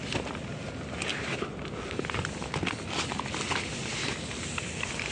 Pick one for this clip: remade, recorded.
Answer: recorded